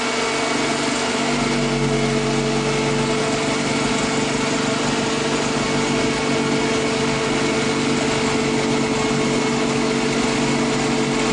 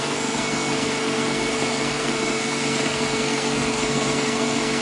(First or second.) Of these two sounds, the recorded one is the first